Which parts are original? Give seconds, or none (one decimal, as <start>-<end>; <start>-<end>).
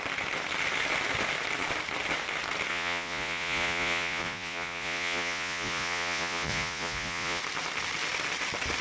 0.0-2.7; 7.4-8.8